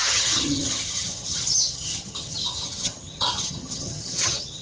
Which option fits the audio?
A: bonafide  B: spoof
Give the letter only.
B